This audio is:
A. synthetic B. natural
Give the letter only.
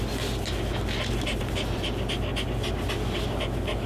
B